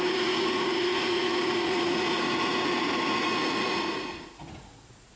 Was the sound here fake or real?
fake